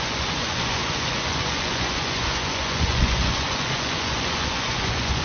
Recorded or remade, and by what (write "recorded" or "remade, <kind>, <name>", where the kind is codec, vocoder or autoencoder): remade, vocoder, Vocos